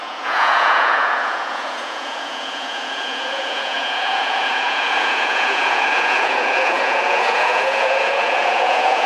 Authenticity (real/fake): fake